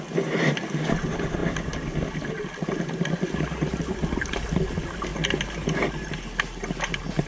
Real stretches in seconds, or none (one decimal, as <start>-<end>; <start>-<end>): 0.0-7.3